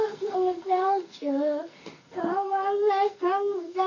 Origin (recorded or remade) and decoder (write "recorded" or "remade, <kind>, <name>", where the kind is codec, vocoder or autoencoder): remade, codec, SNAC